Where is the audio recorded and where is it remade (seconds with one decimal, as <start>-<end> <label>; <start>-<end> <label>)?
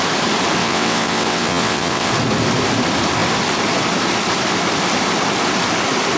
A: 0.0-0.6 recorded; 0.6-2.1 remade; 2.1-6.2 recorded